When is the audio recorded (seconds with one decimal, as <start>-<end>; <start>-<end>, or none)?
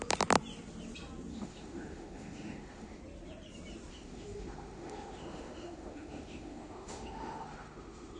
0.0-1.3; 3.0-3.9